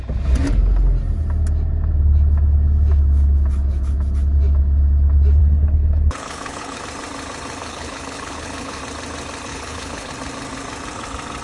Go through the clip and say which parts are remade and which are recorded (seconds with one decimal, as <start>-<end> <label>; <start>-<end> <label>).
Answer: 0.0-5.4 recorded; 5.4-6.8 remade; 6.8-7.6 recorded; 7.6-8.8 remade; 8.8-9.5 recorded; 9.5-10.1 remade; 10.1-11.4 recorded